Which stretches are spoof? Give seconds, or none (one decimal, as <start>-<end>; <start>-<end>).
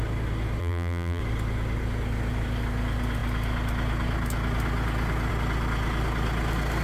0.6-1.2